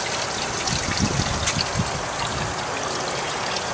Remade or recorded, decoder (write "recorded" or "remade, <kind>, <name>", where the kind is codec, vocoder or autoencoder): recorded